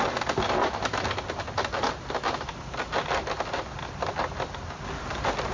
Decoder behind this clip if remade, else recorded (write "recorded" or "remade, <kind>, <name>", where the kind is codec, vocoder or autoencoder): recorded